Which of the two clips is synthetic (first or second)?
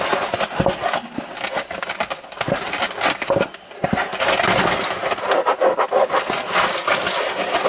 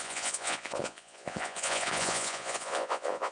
second